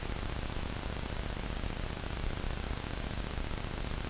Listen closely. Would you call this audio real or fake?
real